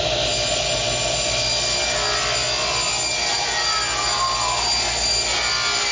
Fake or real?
real